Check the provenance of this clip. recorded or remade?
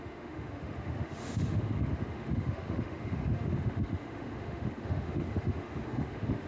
remade